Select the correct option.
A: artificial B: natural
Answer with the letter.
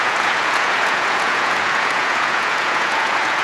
A